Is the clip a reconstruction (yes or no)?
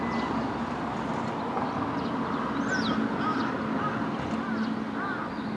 no